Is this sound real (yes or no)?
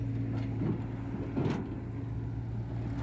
yes